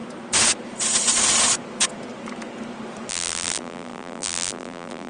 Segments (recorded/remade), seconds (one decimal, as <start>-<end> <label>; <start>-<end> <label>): 0.0-3.1 recorded; 3.1-5.1 remade